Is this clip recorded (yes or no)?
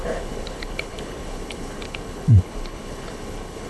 no